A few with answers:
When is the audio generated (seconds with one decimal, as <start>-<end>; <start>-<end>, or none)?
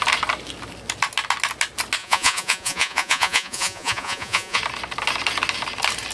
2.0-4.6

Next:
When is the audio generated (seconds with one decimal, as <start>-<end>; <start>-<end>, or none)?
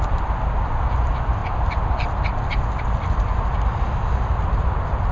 none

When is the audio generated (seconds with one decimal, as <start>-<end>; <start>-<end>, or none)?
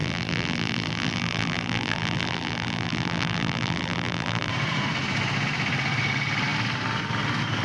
0.0-4.5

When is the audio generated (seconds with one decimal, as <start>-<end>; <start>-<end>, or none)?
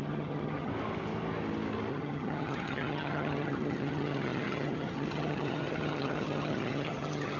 0.0-0.7; 1.9-7.4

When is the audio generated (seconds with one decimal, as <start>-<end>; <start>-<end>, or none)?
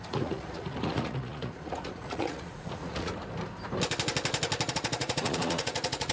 0.0-3.1; 4.7-6.1